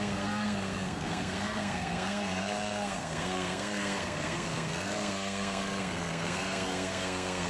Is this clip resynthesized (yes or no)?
yes